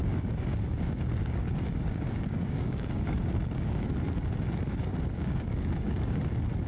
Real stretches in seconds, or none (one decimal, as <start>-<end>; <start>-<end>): 3.9-5.1; 6.2-6.7

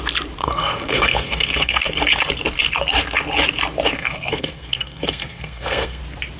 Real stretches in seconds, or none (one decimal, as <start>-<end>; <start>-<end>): 0.0-0.4; 1.9-3.9; 6.0-6.4